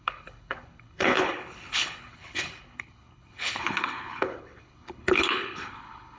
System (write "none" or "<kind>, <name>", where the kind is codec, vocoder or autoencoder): codec, HILCodec